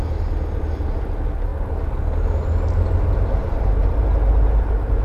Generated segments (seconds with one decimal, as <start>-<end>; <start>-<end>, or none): none